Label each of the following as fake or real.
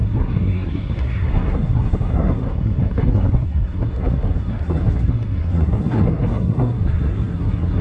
fake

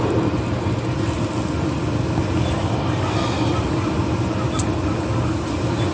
real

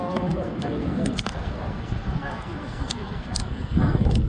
fake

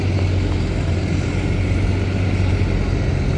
real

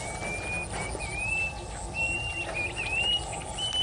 real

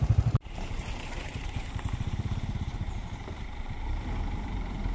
fake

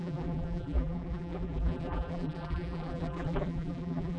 fake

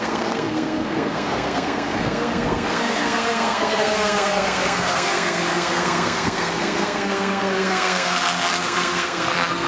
fake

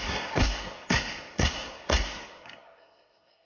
fake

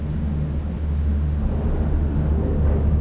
real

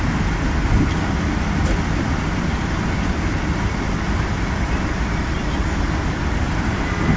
real